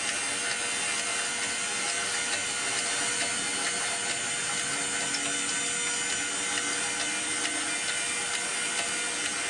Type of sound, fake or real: real